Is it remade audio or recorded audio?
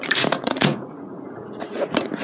remade